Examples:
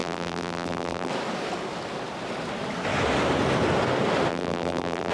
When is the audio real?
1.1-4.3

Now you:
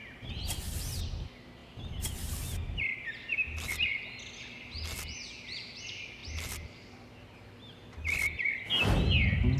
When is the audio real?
0.6-9.6

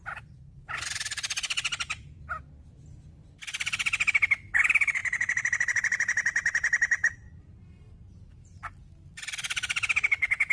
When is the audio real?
0.0-10.5

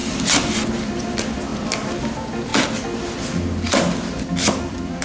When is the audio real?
2.5-4.6

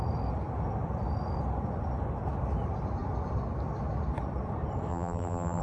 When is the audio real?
0.0-4.9

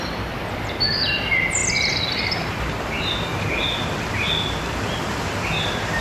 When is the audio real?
0.0-6.0

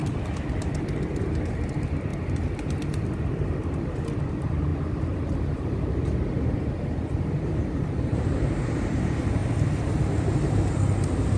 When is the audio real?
0.0-1.2; 2.1-4.2; 4.7-6.7

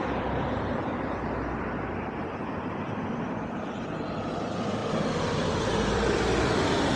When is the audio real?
0.8-1.8